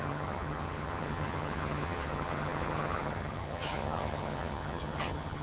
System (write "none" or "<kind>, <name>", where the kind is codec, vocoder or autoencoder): vocoder, HiFi-GAN